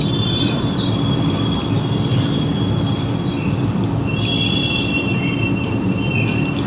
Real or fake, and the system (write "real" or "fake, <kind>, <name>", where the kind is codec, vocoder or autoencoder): fake, vocoder, BigVGAN v2